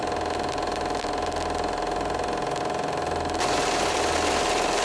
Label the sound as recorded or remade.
recorded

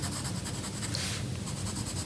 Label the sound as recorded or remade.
recorded